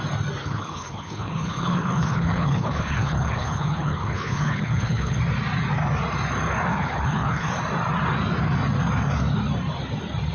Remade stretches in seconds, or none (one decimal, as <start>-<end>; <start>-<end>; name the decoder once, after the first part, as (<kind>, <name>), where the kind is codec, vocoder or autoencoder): 0.4-5.2 (codec, HILCodec); 6.7-7.5